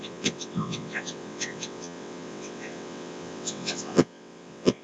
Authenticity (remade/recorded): remade